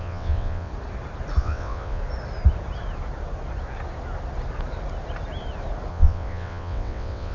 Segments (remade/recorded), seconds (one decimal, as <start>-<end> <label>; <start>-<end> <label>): 0.0-0.7 remade; 0.7-1.4 recorded; 1.4-2.0 remade; 2.0-5.9 recorded; 5.9-7.3 remade